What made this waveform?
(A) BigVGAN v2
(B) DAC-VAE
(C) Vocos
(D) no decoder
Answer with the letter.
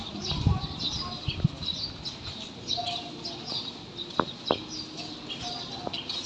D